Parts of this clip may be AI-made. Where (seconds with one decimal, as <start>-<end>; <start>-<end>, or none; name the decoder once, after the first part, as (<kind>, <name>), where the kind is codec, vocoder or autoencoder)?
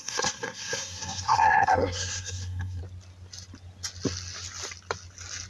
0.0-2.8 (codec, SNAC)